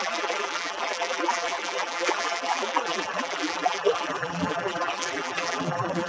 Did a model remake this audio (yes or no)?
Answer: yes